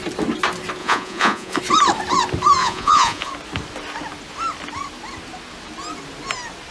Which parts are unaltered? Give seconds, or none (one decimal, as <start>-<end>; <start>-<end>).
0.0-0.8; 1.6-2.6; 3.3-6.7